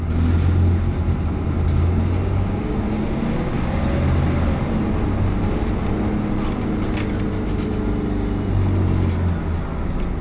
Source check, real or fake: real